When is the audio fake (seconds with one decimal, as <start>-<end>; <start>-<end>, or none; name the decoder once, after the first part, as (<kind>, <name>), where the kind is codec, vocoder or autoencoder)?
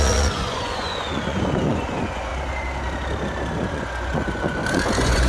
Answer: 0.0-2.3 (vocoder, Vocos); 3.7-5.3